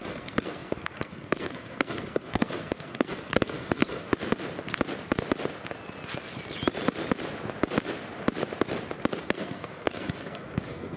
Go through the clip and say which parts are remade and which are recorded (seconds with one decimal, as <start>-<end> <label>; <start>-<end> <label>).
0.0-4.1 remade; 4.1-9.2 recorded; 9.2-11.0 remade